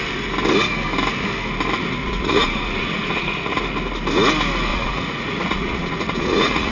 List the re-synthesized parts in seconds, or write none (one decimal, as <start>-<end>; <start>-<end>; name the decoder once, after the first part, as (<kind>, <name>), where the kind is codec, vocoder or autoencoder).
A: 2.0-3.6 (vocoder, Vocos); 4.7-6.7